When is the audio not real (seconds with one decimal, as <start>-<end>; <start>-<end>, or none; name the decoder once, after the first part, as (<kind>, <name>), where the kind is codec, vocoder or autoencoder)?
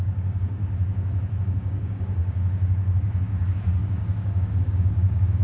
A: 0.0-0.6 (codec, DAC); 1.4-5.4